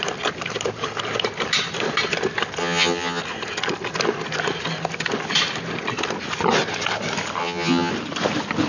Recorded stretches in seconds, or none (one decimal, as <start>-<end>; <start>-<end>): 0.0-2.6; 3.2-7.4; 7.9-8.7